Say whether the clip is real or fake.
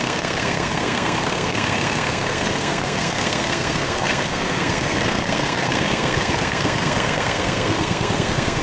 fake